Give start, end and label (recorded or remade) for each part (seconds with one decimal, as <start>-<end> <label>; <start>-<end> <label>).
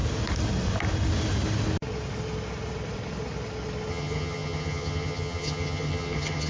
0.0-3.9 recorded; 3.9-6.5 remade